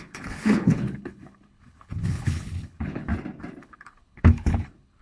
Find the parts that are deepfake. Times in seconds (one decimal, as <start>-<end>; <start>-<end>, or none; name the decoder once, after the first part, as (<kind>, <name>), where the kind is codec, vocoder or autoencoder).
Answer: 0.0-3.1 (codec, HILCodec); 3.6-5.0